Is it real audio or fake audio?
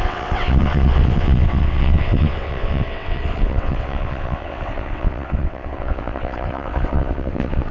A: fake